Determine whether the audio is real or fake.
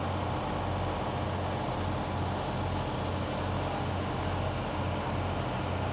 real